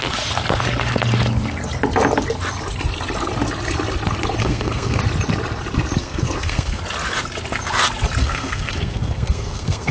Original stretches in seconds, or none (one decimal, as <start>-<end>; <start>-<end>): 0.0-4.4; 5.0-6.0; 6.8-8.2